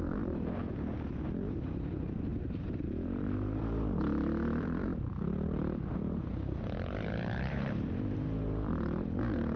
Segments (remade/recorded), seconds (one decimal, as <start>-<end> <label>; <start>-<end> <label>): 0.0-0.6 remade; 0.6-1.9 recorded; 1.9-9.6 remade